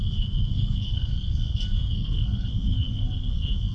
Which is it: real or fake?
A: fake